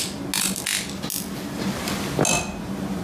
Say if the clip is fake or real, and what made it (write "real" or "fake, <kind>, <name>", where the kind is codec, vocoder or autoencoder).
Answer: real